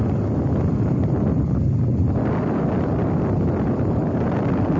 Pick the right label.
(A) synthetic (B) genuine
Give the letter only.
B